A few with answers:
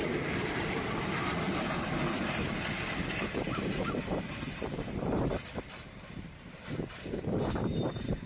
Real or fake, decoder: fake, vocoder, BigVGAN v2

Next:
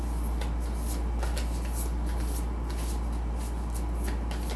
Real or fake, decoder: real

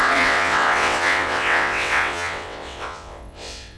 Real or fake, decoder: fake, vocoder, WaveNeXt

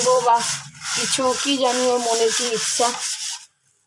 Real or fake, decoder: fake, vocoder, BigVGAN v2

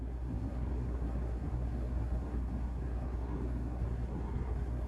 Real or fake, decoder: fake, codec, SNAC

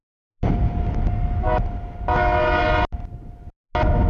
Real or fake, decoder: real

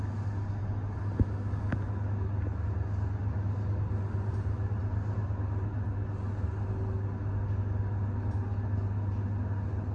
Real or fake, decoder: real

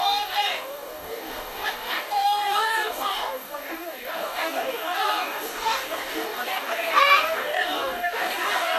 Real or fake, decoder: fake, codec, DAC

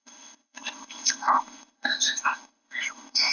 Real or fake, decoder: fake, codec, ZipCodec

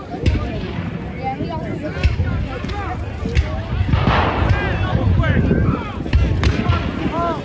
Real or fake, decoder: real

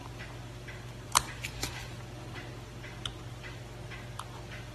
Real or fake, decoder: real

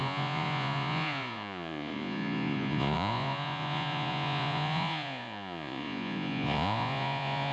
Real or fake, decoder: fake, vocoder, Vocos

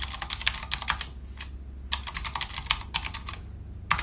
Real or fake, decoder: real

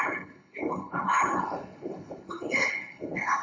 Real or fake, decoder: fake, codec, HILCodec